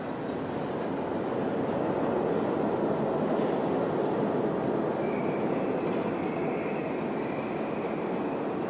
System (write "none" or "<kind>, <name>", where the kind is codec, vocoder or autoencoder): none